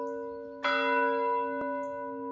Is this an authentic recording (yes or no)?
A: yes